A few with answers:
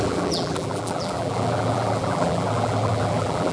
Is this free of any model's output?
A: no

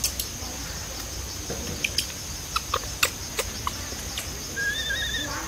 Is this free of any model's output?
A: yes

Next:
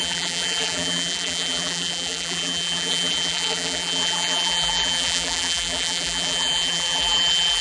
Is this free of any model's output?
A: no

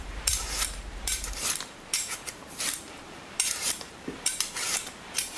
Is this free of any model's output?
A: no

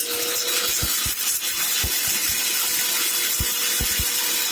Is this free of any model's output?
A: yes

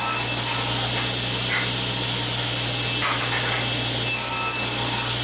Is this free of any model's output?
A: yes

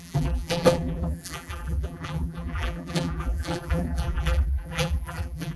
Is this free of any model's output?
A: no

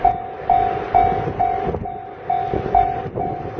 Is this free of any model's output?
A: yes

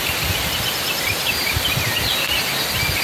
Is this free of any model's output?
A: yes